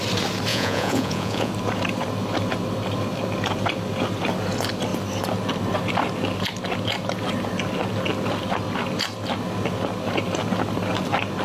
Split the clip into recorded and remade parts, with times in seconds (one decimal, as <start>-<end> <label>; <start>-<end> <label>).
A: 0.0-0.5 recorded; 0.5-1.5 remade; 1.5-11.4 recorded

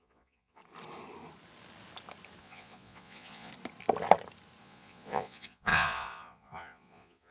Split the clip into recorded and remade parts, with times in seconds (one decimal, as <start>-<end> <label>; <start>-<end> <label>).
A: 0.0-0.6 remade; 0.6-2.4 recorded; 2.4-3.5 remade; 3.5-4.6 recorded; 4.6-7.3 remade

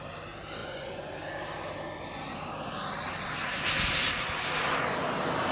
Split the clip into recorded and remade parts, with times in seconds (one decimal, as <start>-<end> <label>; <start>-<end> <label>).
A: 0.0-0.6 recorded; 0.6-1.1 remade; 1.1-5.5 recorded

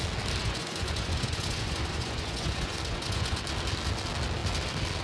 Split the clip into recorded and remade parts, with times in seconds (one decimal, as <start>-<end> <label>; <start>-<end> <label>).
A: 0.0-0.4 recorded; 0.4-3.4 remade; 3.4-5.0 recorded

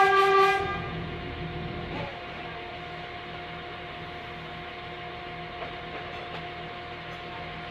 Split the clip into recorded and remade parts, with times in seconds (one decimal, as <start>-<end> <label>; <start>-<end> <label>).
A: 0.0-0.7 recorded; 0.7-1.2 remade; 1.2-7.7 recorded

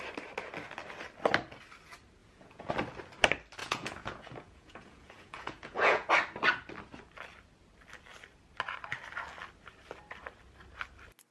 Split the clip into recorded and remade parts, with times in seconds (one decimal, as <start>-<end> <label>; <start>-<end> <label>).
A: 0.0-2.2 recorded; 2.2-2.7 remade; 2.7-3.6 recorded; 3.6-6.1 remade; 6.1-11.3 recorded

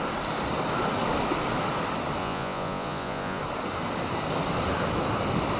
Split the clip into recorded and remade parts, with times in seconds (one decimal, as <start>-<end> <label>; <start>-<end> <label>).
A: 0.0-2.2 recorded; 2.2-3.4 remade; 3.4-5.6 recorded

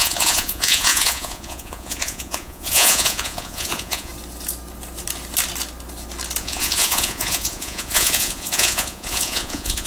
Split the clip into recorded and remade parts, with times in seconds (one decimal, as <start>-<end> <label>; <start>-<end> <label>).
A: 0.0-4.1 remade; 4.1-6.4 recorded; 6.4-9.9 remade